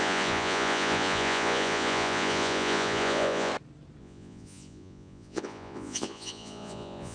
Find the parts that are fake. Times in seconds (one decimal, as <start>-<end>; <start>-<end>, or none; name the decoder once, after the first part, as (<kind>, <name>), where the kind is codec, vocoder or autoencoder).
0.0-3.5 (vocoder, Vocos); 4.0-7.1

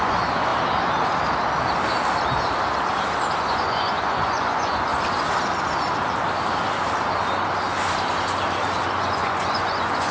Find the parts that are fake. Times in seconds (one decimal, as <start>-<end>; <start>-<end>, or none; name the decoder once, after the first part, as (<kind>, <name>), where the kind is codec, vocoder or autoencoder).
0.0-0.5 (vocoder, Vocos); 3.4-4.9; 8.9-10.1

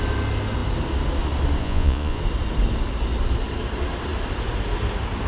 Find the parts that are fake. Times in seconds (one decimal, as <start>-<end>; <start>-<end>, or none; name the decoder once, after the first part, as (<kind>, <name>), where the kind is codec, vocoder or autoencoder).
1.6-2.2 (vocoder, Vocos)

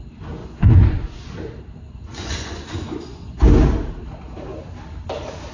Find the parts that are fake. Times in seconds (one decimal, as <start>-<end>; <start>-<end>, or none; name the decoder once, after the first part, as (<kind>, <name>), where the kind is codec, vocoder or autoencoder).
0.4-1.2 (vocoder, Vocos); 2.1-3.4

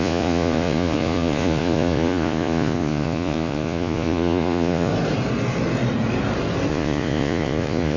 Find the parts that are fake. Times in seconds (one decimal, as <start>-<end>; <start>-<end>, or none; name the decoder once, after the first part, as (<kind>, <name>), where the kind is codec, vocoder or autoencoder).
0.0-4.9 (vocoder, Vocos); 6.7-8.0

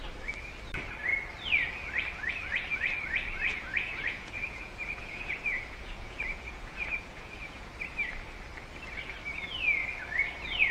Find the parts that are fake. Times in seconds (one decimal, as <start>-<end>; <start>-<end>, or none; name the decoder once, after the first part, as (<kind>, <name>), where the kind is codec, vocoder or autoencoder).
3.5-7.7 (vocoder, Vocos)